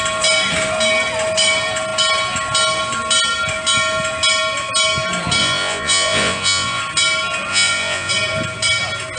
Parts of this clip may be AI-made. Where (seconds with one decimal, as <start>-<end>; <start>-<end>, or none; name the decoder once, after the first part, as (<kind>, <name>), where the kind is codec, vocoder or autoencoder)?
5.4-6.8 (vocoder, Vocos); 7.5-8.1